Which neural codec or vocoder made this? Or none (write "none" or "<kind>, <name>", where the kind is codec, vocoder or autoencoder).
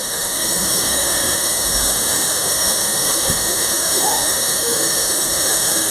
autoencoder, DAC-VAE